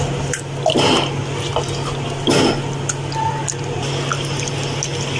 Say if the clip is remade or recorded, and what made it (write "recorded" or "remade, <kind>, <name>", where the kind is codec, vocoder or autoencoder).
recorded